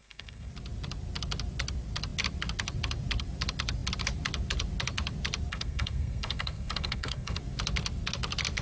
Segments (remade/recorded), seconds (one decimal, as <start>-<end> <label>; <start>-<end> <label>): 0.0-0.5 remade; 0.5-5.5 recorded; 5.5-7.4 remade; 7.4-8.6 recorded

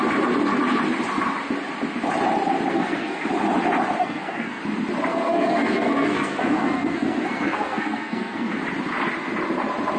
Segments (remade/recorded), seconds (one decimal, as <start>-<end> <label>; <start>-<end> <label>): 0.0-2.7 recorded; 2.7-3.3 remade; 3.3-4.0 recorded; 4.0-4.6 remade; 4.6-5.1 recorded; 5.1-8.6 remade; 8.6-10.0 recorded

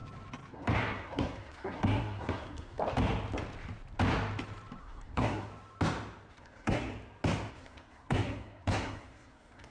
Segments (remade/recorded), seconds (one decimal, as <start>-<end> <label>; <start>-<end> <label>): 0.0-0.5 recorded; 0.5-2.8 remade; 2.8-4.8 recorded; 4.8-5.5 remade; 5.5-6.3 recorded; 6.3-6.9 remade; 6.9-7.5 recorded; 7.5-9.7 remade

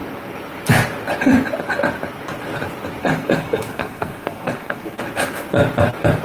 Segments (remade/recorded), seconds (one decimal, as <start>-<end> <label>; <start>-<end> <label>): 0.0-3.0 recorded; 3.0-5.0 remade; 5.0-6.2 recorded

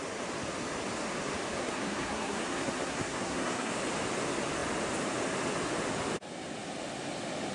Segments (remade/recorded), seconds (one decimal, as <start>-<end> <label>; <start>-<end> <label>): 0.0-1.6 recorded; 1.6-3.7 remade; 3.7-7.5 recorded

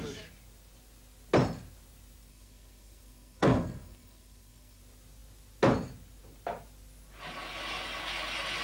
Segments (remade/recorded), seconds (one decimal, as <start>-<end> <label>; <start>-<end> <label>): 0.0-2.3 recorded; 2.3-4.8 remade; 4.8-8.6 recorded

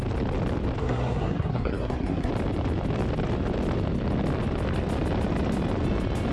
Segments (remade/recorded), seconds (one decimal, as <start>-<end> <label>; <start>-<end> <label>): 0.0-0.8 recorded; 0.8-2.3 remade; 2.3-6.3 recorded

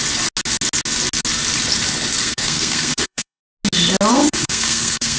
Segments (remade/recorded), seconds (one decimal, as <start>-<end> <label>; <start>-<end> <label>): 0.0-2.2 recorded; 2.2-3.4 remade; 3.4-4.1 recorded; 4.1-5.2 remade